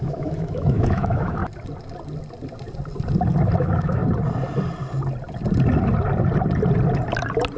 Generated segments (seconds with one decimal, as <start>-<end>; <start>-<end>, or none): 0.0-1.4; 3.6-4.0